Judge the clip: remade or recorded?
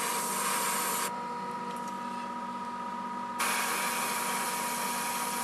recorded